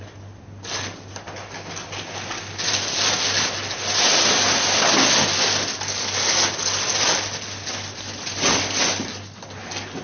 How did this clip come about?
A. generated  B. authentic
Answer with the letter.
B